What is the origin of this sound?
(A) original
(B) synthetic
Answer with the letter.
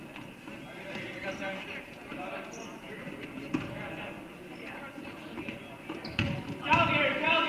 A